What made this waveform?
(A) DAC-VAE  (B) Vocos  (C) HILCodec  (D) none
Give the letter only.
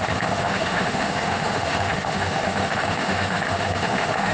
A